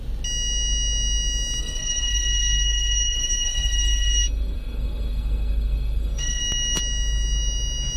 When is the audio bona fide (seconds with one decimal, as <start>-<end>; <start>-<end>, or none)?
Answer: 0.0-1.6; 6.4-8.0

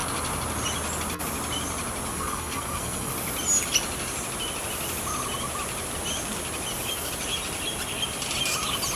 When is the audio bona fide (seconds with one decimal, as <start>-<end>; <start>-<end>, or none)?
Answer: 0.0-2.1; 3.1-9.0